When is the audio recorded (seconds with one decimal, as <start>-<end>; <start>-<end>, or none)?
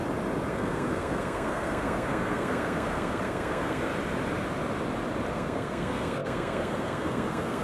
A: 0.0-0.5; 3.9-5.3